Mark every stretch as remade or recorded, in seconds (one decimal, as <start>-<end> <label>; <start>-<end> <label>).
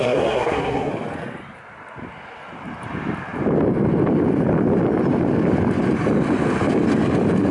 0.0-0.9 remade; 0.9-7.5 recorded